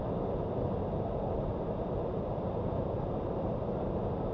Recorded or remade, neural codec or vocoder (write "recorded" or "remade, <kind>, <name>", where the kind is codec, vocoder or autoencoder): recorded